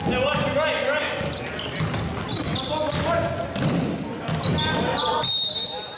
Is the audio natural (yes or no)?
yes